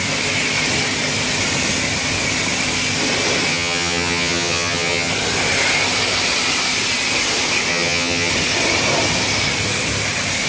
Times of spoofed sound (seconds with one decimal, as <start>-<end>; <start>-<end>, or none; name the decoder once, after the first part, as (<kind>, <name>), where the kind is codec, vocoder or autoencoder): 3.5-5.1 (vocoder, HiFi-GAN); 7.7-8.3